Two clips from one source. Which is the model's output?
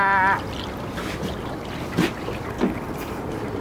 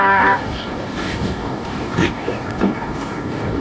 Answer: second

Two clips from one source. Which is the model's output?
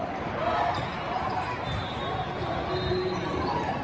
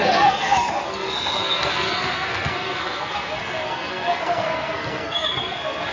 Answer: second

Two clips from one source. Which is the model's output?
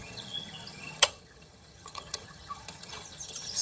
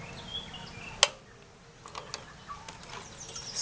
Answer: first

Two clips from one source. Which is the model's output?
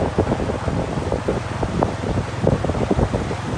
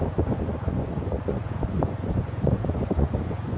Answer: second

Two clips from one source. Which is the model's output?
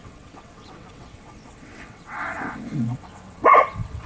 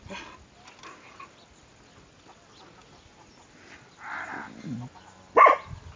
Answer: first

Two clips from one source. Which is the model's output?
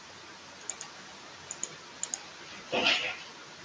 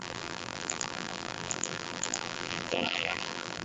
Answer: second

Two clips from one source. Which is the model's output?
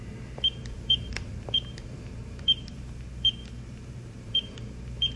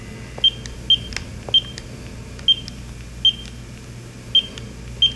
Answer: first